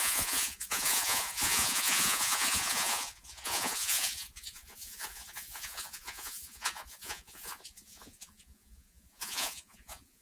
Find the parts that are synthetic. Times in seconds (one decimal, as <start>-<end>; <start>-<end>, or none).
0.0-10.2